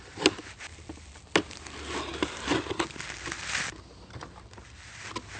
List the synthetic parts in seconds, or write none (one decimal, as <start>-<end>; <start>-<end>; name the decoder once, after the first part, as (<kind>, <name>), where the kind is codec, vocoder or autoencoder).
2.1-5.0 (vocoder, BigVGAN v2)